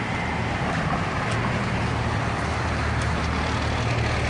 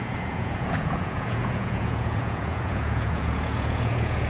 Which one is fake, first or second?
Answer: second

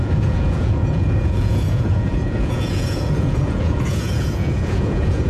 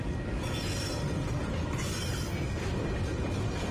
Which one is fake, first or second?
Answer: first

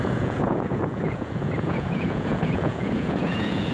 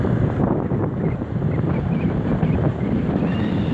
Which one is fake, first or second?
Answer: first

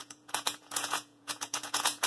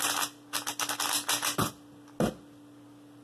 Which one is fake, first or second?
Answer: first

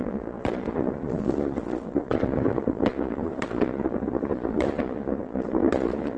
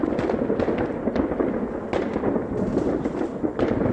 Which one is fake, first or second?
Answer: first